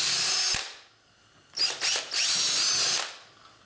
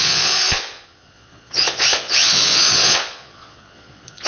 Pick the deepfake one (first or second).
second